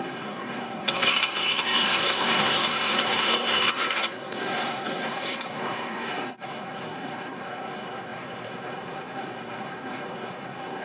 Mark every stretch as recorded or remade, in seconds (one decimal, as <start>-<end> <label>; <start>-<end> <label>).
0.0-10.8 remade